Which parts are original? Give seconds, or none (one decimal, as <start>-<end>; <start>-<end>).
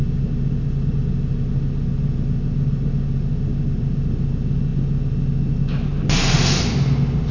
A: 0.0-7.3